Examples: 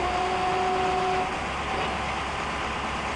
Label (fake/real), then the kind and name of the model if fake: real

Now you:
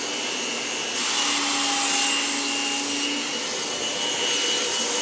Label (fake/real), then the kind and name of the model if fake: real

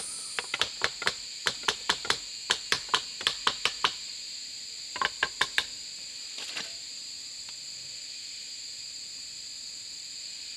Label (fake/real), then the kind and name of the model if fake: real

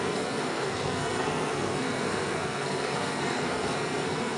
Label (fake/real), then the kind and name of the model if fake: fake, codec, SNAC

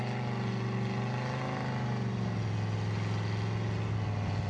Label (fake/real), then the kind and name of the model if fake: real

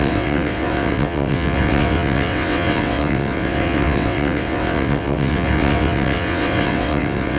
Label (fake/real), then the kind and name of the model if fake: fake, vocoder, WaveNeXt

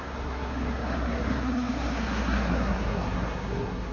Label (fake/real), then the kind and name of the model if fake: fake, codec, SNAC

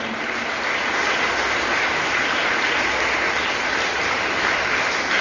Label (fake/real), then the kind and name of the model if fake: real